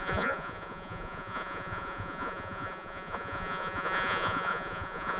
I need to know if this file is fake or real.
fake